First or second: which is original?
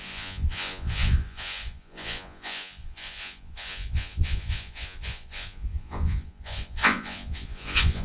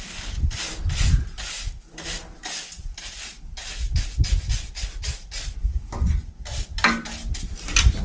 second